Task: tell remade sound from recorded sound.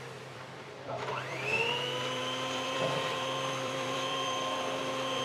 remade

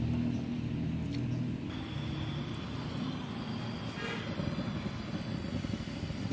recorded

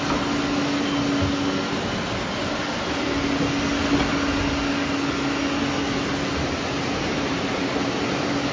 recorded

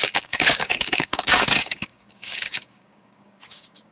remade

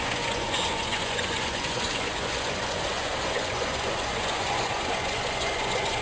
remade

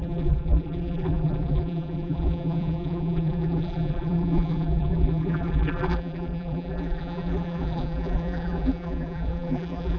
remade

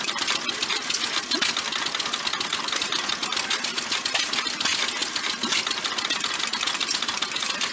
recorded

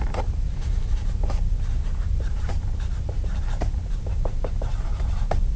remade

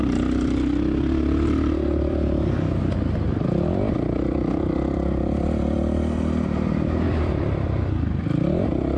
remade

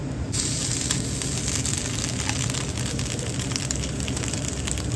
recorded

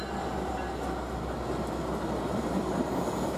recorded